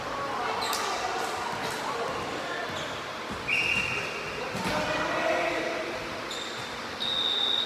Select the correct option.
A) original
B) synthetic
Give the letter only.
A